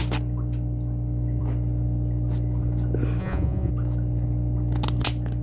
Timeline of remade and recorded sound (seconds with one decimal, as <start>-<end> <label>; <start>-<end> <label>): 0.0-3.2 recorded; 3.2-3.7 remade; 3.7-5.4 recorded